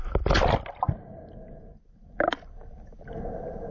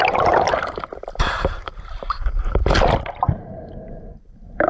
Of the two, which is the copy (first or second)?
second